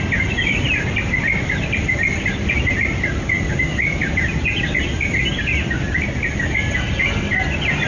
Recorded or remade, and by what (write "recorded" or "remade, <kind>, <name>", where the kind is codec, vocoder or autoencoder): recorded